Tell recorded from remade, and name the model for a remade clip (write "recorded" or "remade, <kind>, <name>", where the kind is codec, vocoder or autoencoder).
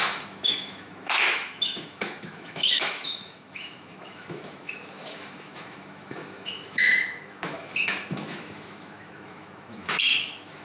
remade, autoencoder, DAC-VAE